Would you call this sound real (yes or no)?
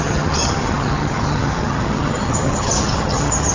no